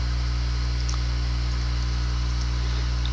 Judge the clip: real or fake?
real